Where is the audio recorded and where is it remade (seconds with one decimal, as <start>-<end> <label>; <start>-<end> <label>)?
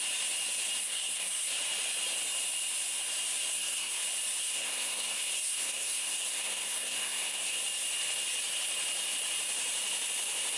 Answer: 0.0-0.8 recorded; 0.8-1.5 remade; 1.5-3.5 recorded; 3.5-4.0 remade; 4.0-4.4 recorded; 4.4-7.6 remade; 7.6-10.6 recorded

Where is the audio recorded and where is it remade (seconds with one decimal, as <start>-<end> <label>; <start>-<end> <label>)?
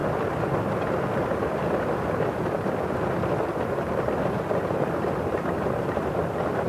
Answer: 0.0-6.7 recorded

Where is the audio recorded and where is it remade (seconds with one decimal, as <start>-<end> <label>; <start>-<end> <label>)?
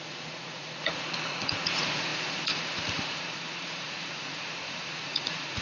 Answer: 0.0-5.6 remade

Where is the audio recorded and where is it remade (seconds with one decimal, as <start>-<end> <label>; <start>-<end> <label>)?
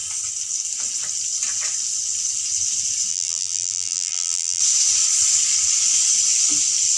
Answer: 0.0-3.1 recorded; 3.1-4.6 remade; 4.6-7.0 recorded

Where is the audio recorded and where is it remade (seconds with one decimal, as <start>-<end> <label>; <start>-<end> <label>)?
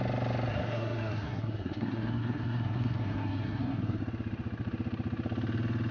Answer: 0.0-0.5 recorded; 0.5-4.0 remade; 4.0-5.9 recorded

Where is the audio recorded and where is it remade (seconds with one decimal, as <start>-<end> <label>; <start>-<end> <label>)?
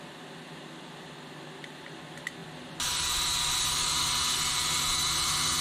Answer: 0.0-2.4 recorded; 2.4-4.6 remade; 4.6-5.6 recorded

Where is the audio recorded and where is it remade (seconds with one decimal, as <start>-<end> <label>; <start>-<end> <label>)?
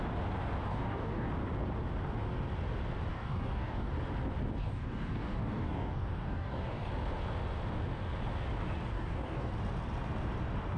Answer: 0.0-0.7 recorded; 0.7-1.3 remade; 1.3-3.1 recorded; 3.1-3.9 remade; 3.9-4.6 recorded; 4.6-6.9 remade; 6.9-8.9 recorded; 8.9-9.5 remade; 9.5-10.8 recorded